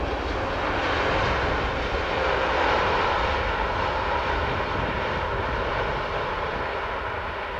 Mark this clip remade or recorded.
recorded